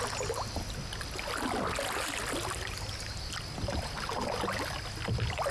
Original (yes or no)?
yes